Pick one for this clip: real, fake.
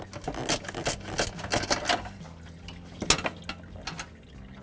real